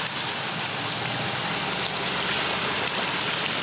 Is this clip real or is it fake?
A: real